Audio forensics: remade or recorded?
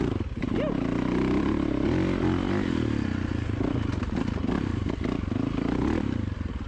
recorded